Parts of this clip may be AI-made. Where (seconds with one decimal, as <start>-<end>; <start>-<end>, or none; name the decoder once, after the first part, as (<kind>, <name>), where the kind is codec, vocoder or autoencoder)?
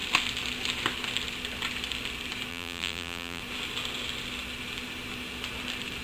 2.5-3.4 (vocoder, BigVGAN v2)